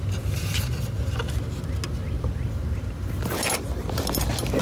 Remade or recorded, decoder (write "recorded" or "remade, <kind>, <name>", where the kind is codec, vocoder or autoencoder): recorded